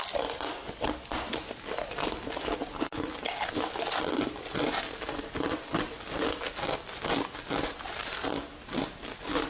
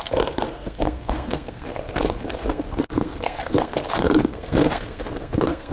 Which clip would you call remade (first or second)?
second